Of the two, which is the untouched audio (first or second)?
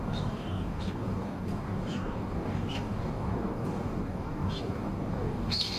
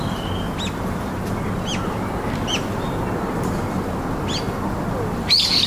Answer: second